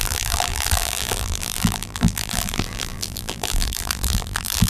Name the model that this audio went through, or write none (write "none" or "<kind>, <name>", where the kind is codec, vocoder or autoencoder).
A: vocoder, BigVGAN v2